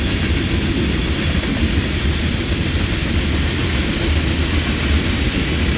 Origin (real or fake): real